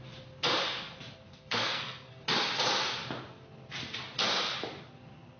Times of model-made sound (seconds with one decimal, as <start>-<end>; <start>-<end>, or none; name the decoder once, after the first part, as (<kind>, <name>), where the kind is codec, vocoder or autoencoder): 1.3-2.2 (codec, SNAC)